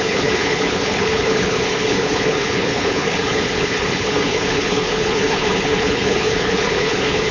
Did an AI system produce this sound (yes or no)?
yes